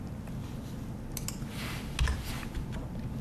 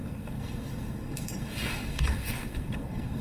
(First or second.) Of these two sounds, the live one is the first